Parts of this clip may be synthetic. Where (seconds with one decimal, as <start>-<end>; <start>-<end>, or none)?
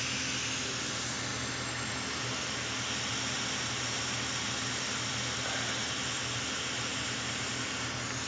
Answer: none